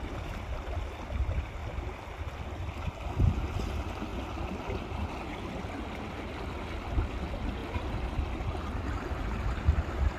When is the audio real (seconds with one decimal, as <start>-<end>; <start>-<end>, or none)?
0.0-4.1; 5.1-10.2